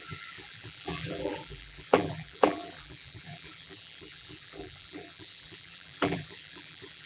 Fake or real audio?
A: fake